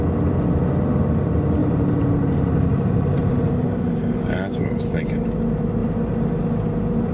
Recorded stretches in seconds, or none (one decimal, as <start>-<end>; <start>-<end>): 0.0-1.6; 3.6-5.8; 6.4-7.1